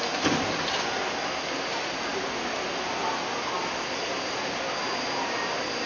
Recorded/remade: recorded